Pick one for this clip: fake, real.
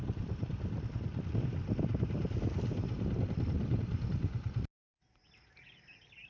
real